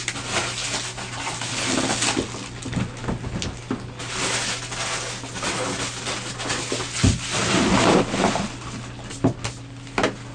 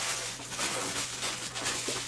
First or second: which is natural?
first